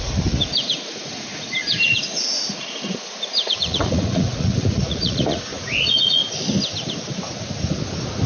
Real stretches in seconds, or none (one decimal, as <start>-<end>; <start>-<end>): 6.2-8.3